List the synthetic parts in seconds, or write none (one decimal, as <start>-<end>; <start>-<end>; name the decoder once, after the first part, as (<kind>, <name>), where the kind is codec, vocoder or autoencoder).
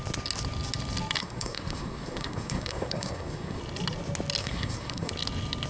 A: 1.2-3.6 (codec, SNAC); 4.4-5.1